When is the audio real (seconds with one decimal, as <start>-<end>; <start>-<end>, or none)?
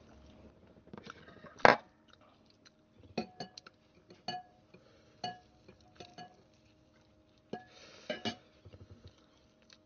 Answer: 0.0-9.9